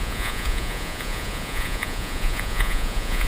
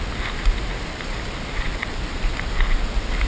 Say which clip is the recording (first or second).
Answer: second